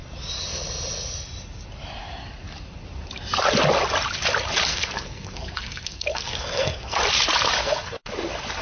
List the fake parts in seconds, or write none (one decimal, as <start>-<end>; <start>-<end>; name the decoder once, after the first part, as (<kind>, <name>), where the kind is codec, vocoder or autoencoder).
4.7-7.0 (codec, SNAC); 7.6-8.1

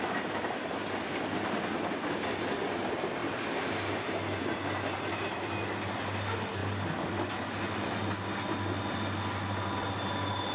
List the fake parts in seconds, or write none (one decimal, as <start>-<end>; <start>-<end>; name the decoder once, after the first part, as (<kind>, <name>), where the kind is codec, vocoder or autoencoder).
none

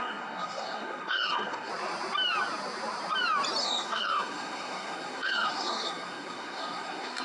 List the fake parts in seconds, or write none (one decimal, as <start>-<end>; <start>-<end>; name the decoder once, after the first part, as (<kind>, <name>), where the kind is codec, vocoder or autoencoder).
0.0-1.7 (codec, SNAC); 3.6-7.2